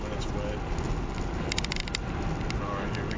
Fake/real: real